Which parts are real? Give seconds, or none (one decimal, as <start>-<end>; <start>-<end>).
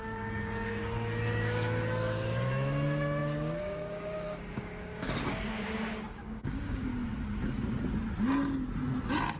6.9-9.4